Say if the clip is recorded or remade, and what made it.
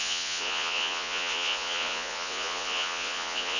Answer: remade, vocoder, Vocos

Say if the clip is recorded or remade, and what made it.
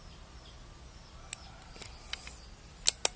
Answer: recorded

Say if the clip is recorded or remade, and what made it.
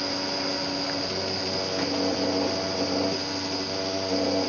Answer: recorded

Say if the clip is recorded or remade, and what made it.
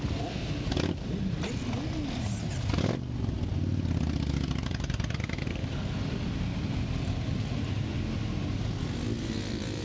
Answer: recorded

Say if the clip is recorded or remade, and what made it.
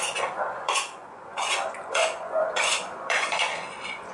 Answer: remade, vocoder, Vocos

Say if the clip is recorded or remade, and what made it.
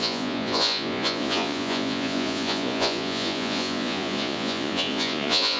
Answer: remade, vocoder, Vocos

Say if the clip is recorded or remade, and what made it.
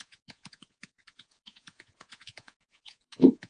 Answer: remade, vocoder, Vocos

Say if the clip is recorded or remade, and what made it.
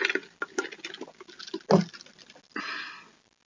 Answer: recorded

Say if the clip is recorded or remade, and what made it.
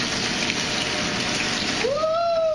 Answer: recorded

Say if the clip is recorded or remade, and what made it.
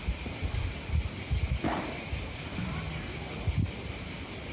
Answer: recorded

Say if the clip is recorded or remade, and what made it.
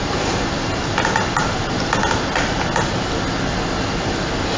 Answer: recorded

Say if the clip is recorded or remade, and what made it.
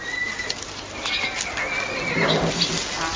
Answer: recorded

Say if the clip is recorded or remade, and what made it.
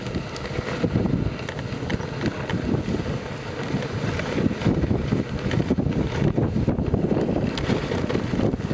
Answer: recorded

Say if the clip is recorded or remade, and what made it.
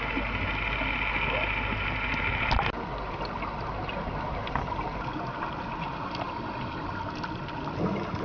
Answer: recorded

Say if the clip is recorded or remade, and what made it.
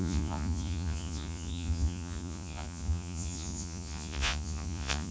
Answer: remade, vocoder, Vocos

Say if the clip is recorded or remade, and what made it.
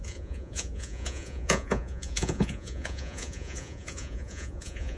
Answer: remade, vocoder, Vocos